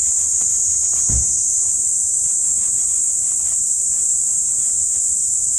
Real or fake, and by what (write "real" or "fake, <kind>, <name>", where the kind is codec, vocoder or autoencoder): fake, vocoder, BigVGAN v2